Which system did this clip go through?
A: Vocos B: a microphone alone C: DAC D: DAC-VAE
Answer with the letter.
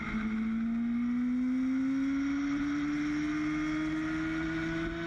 B